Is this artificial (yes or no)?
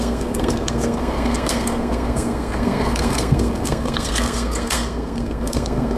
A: yes